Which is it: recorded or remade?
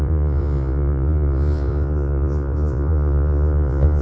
remade